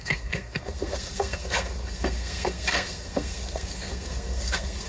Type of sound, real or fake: fake